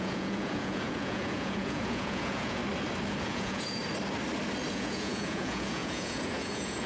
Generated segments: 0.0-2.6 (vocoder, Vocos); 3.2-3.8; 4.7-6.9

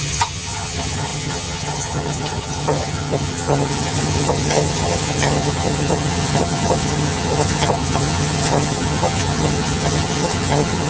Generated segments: 0.0-10.9 (vocoder, HiFi-GAN)